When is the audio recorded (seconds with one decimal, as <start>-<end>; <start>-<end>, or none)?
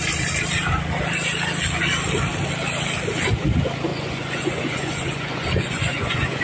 0.0-3.9